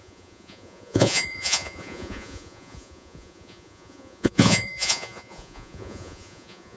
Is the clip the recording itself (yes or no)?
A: no